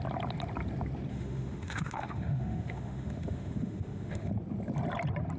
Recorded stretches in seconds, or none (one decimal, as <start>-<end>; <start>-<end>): 0.0-1.1; 4.3-5.4